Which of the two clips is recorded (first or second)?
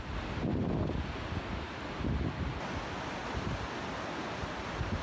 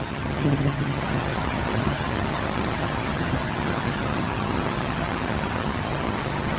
first